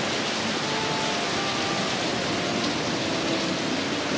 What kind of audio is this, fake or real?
real